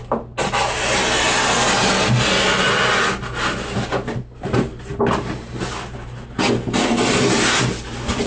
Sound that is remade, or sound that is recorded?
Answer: recorded